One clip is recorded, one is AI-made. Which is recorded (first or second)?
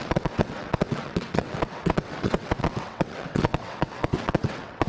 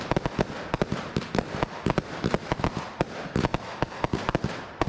second